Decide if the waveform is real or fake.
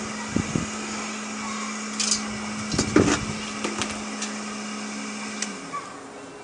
real